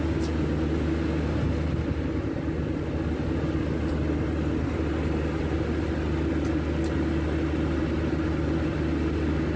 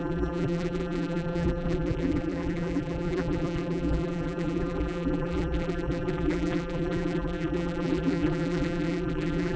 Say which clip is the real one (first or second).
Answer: first